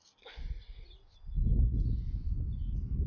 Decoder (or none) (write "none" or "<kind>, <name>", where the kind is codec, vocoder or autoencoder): none